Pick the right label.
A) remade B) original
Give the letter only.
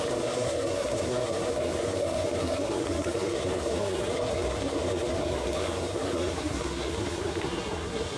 A